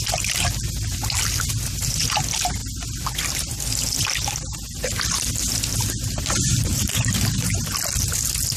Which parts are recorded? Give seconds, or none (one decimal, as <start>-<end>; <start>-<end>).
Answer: 0.0-6.7; 7.7-8.6